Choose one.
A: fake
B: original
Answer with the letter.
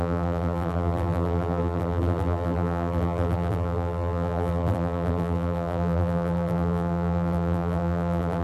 A